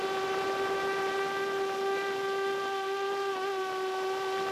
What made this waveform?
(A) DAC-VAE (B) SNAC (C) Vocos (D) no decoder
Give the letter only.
D